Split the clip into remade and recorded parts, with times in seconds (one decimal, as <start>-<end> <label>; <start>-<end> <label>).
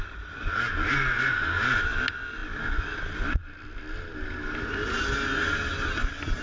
0.0-6.4 recorded